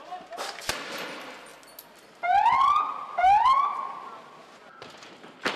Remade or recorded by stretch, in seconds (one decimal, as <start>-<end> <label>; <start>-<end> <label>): 0.0-5.6 recorded